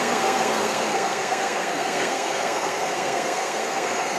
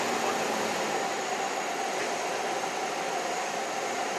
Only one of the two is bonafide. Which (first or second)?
second